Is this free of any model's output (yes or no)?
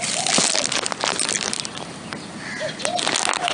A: yes